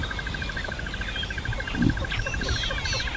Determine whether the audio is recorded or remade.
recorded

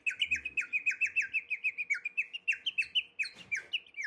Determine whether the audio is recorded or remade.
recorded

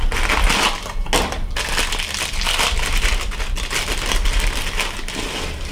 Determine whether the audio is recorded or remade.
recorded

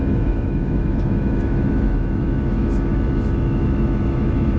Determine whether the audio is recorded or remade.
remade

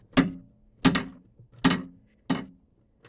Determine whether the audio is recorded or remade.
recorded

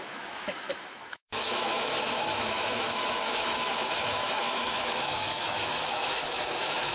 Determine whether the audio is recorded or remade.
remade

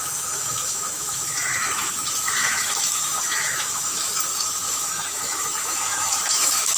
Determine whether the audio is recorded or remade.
remade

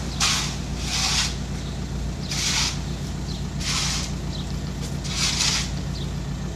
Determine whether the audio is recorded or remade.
recorded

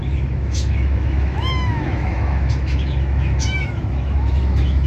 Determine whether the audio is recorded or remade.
remade